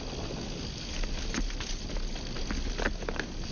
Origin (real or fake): real